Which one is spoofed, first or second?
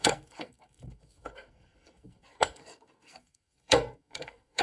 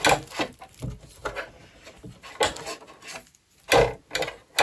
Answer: first